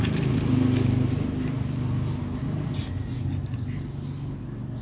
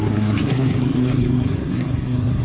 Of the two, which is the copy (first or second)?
second